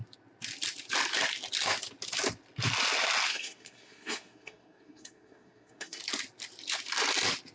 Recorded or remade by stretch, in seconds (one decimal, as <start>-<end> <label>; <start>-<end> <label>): 0.0-3.3 recorded; 3.3-6.0 remade; 6.0-7.5 recorded